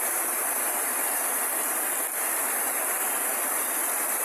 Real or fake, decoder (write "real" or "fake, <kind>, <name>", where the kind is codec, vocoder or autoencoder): fake, vocoder, BigVGAN v2